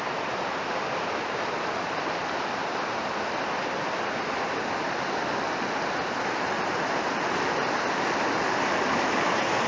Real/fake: real